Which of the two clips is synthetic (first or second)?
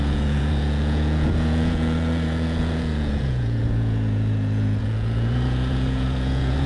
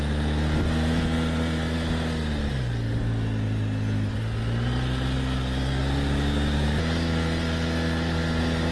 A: first